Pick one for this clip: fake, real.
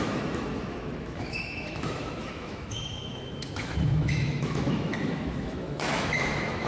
fake